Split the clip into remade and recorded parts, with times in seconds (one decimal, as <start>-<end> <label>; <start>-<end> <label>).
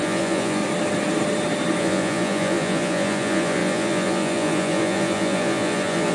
0.0-0.6 remade; 0.6-1.8 recorded; 1.8-6.1 remade